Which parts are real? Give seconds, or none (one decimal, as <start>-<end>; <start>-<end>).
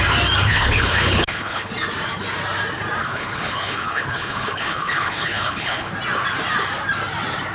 0.0-0.4; 1.7-3.0; 5.9-7.5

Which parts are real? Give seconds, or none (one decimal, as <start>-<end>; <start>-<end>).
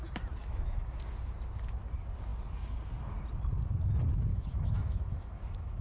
0.0-0.4; 1.0-4.3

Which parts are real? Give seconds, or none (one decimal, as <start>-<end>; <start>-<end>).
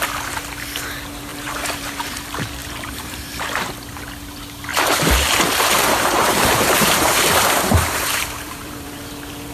0.0-1.3; 2.1-2.6; 4.0-4.7; 9.1-9.5